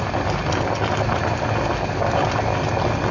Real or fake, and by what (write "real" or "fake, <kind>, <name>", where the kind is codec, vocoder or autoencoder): real